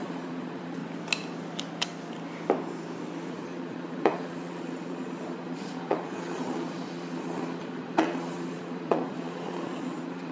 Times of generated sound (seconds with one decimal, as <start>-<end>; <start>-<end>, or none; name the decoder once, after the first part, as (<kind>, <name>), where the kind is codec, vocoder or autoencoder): 0.0-0.8 (vocoder, Vocos); 3.3-10.3